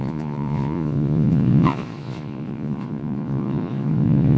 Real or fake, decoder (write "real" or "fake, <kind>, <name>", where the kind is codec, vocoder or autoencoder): fake, vocoder, Vocos